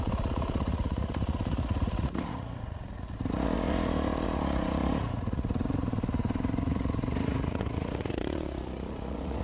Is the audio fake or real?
fake